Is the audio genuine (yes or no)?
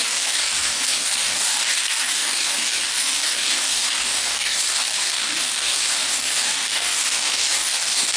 no